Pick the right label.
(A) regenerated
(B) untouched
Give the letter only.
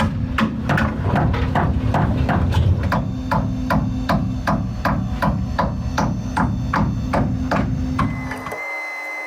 B